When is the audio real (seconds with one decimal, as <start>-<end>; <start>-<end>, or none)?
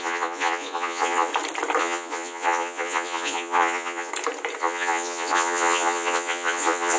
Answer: 1.3-1.8; 4.1-4.6